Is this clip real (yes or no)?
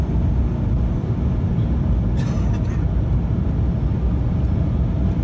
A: yes